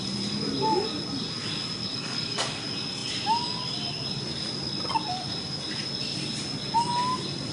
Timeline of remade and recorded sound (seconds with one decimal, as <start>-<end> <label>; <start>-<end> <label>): 0.0-1.8 recorded; 1.8-2.6 remade; 2.6-7.5 recorded